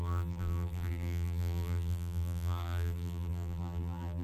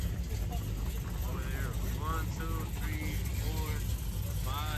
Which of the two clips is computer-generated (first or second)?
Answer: first